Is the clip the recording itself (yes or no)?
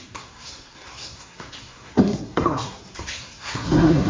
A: no